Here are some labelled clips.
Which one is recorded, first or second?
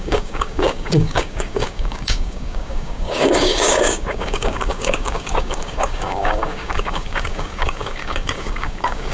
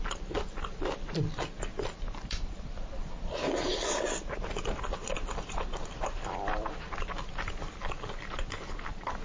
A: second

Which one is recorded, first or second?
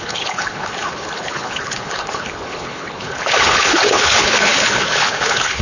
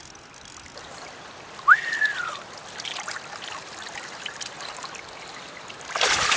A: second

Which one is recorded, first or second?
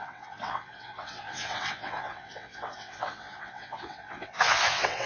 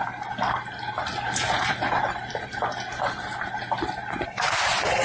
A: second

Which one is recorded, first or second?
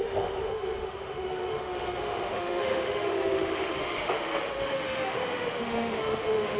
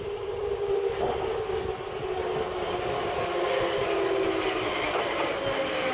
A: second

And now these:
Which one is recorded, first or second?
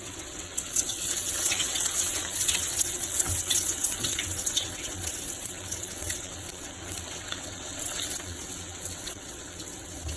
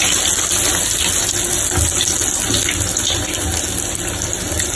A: second